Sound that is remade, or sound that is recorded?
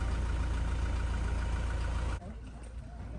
recorded